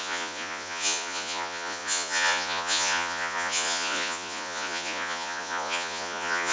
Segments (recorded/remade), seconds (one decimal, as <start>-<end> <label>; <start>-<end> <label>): 0.0-6.5 remade

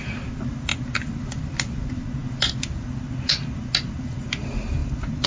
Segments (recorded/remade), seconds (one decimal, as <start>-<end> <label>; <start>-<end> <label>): 0.0-5.3 recorded

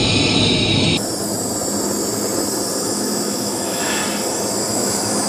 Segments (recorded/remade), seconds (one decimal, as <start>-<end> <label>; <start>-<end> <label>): 0.0-2.8 recorded; 2.8-4.0 remade; 4.0-4.7 recorded; 4.7-5.3 remade

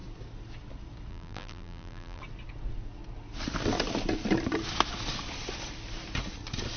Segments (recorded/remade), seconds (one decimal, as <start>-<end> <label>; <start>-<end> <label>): 0.0-1.1 recorded; 1.1-2.2 remade; 2.2-6.8 recorded

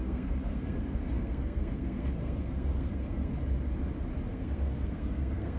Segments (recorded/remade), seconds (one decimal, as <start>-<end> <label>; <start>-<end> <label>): 0.0-3.3 remade; 3.3-4.3 recorded; 4.3-5.6 remade

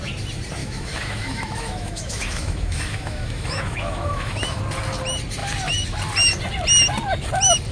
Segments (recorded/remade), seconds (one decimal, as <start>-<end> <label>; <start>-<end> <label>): 0.0-0.6 recorded; 0.6-4.6 remade; 4.6-7.7 recorded